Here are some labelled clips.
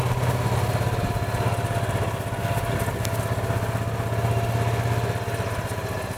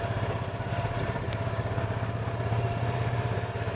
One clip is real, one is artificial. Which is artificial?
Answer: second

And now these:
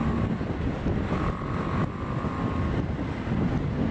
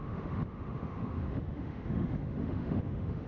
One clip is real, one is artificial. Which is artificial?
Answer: second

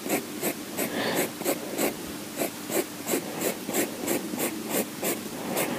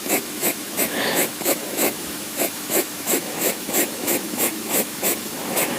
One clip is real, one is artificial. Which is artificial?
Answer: second